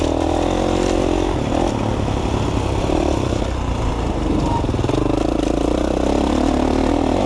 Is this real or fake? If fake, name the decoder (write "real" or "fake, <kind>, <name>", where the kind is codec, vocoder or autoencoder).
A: real